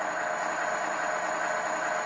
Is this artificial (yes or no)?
no